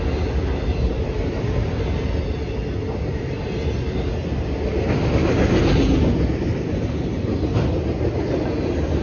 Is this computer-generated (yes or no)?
no